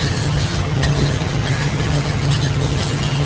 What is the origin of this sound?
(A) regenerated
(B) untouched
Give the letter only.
A